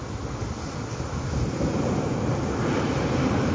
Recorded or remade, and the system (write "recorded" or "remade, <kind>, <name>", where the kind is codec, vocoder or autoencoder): recorded